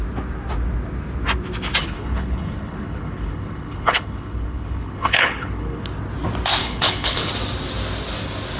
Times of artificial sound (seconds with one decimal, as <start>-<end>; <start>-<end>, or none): 1.8-5.8; 6.6-7.3